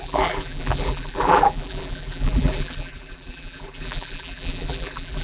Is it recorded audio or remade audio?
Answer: remade